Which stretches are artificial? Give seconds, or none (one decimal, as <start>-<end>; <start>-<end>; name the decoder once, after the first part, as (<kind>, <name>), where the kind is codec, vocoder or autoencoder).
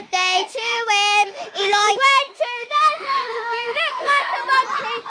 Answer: 0.0-4.3 (autoencoder, DAC-VAE)